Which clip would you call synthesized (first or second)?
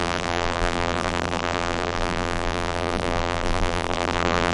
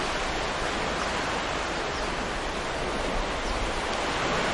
first